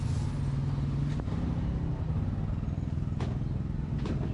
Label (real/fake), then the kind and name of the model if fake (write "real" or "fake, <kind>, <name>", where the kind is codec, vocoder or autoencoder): real